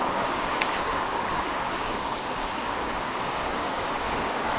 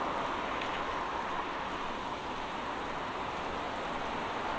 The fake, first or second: first